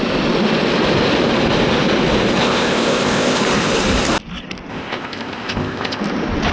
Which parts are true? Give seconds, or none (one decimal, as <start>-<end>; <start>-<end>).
0.0-2.4; 3.4-4.7; 6.0-6.5